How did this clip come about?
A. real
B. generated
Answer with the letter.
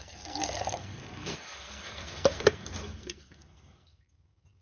B